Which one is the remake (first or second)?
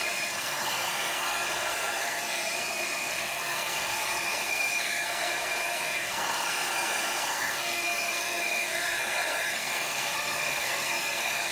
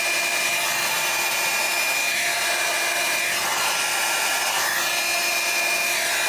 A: first